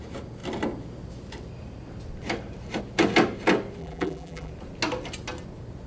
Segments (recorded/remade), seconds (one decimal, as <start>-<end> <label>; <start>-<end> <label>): 0.0-3.8 recorded; 3.8-4.5 remade; 4.5-5.9 recorded